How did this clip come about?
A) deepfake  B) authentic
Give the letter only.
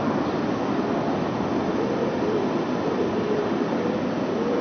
B